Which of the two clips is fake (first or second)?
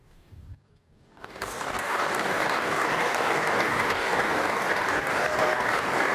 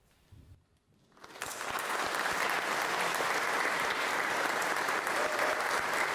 first